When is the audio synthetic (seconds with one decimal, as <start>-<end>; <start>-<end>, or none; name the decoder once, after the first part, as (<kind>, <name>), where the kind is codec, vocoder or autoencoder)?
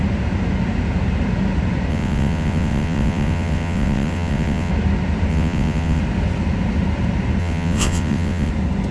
1.9-4.7 (vocoder, WaveNeXt); 5.3-6.0; 7.4-8.5